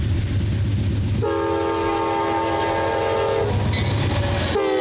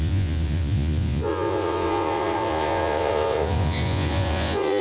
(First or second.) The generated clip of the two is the second